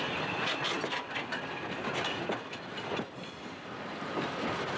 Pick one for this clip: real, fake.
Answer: real